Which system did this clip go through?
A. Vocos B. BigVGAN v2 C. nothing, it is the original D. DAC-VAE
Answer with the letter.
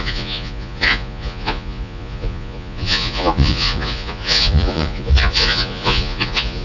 A